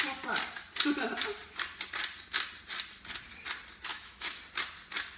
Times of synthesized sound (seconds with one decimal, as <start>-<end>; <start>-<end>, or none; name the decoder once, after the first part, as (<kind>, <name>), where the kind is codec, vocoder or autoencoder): 3.9-4.4 (autoencoder, DAC-VAE)